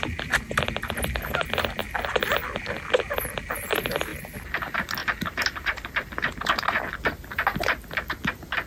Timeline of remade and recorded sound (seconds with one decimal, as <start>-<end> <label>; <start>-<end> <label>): 0.0-1.8 remade; 1.8-2.4 recorded; 2.4-4.1 remade; 4.1-4.6 recorded; 4.6-5.0 remade; 5.0-7.9 recorded; 7.9-8.7 remade